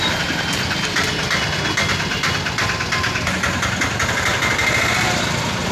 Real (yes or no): yes